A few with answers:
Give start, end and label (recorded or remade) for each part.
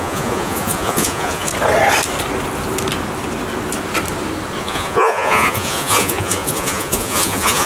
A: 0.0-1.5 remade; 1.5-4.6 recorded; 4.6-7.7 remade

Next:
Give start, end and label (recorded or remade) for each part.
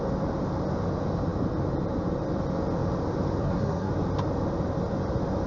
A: 0.0-3.4 recorded; 3.4-3.9 remade; 3.9-5.5 recorded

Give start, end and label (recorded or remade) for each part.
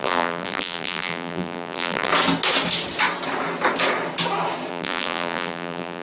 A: 0.0-2.1 remade; 2.1-4.7 recorded; 4.7-6.0 remade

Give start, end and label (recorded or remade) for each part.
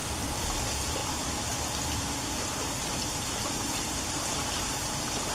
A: 0.0-0.6 recorded; 0.6-5.3 remade